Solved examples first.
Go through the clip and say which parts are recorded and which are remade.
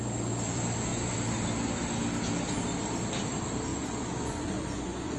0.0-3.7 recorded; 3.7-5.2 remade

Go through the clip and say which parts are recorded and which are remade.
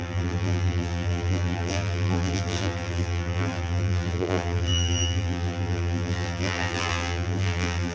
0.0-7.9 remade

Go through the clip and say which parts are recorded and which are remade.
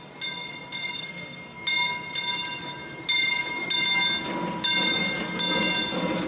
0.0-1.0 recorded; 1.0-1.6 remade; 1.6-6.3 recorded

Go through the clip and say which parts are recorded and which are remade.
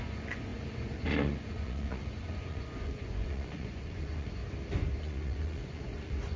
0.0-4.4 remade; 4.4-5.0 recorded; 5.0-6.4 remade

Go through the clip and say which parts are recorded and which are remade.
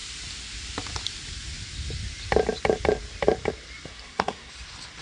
0.0-3.9 recorded; 3.9-4.5 remade; 4.5-5.0 recorded